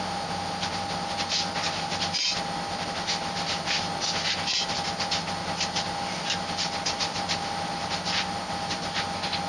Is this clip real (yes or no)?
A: yes